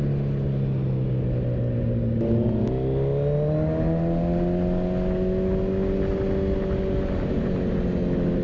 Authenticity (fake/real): real